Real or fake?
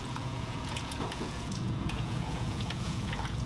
fake